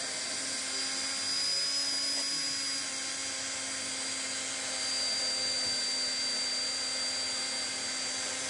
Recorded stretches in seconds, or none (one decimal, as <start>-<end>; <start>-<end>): 0.0-8.5